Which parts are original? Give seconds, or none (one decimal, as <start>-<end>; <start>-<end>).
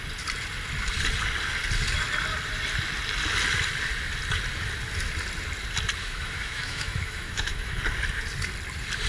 0.0-6.0; 7.8-9.1